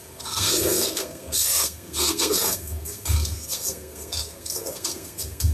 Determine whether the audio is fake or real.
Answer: fake